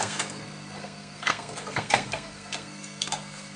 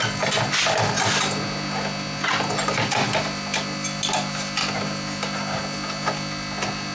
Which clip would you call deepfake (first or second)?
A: first